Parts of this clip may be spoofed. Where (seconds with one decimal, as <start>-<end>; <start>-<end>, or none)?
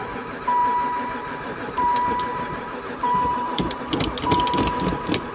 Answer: 0.6-3.8